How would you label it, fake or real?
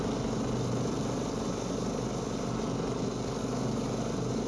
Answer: real